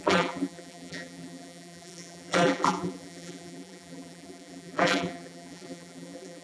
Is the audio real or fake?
fake